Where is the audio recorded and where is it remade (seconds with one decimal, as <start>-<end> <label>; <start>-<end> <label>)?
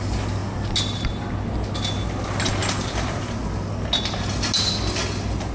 0.0-5.5 recorded